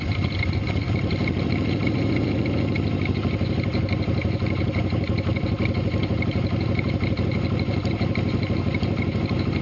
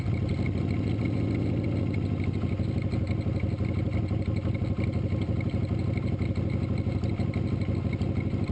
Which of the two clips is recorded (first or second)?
second